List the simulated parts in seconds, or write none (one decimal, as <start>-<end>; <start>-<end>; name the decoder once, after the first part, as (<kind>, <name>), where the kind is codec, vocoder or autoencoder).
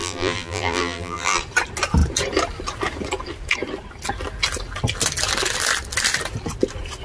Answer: 0.0-1.4 (vocoder, BigVGAN v2)